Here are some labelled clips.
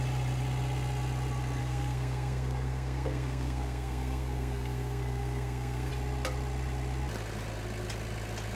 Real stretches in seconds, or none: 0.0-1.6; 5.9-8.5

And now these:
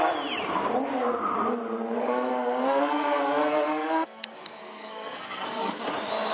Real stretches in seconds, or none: 0.0-2.0; 5.8-6.3

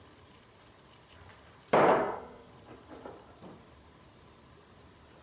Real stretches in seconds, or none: 0.0-2.0; 2.5-5.2

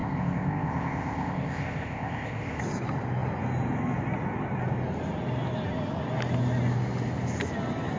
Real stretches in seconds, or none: 2.6-8.0

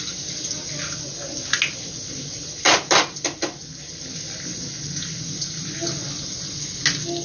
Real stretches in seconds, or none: 0.0-7.2